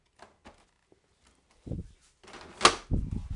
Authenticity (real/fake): real